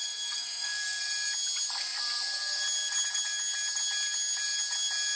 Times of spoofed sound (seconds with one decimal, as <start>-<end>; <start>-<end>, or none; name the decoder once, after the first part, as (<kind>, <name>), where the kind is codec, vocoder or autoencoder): 0.0-1.0 (codec, SNAC)